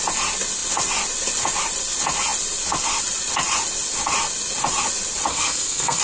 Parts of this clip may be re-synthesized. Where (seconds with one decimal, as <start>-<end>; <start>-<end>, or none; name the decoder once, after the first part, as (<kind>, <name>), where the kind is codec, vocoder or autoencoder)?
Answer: 5.3-6.0 (codec, SNAC)